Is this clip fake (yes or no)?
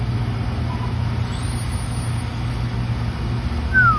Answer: no